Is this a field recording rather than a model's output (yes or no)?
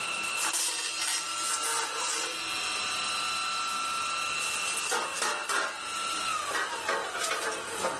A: yes